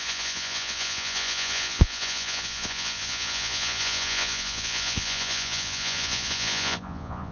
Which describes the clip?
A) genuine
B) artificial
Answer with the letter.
B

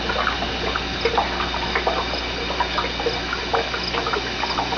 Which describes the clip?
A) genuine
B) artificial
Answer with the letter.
A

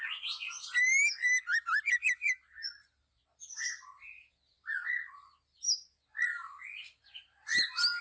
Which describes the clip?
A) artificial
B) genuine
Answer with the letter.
B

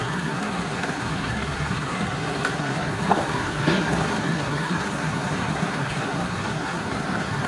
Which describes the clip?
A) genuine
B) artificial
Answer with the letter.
B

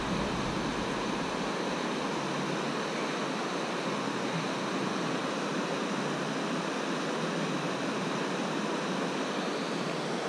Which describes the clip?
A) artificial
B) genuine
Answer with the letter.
B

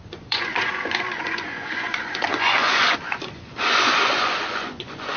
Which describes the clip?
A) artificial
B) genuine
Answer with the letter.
A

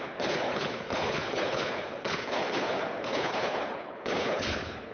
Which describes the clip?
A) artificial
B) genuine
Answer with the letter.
A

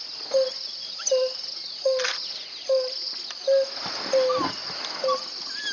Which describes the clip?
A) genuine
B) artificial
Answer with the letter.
A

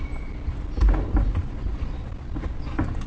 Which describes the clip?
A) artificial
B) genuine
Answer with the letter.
B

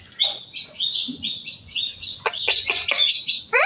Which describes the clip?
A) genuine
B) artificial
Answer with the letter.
B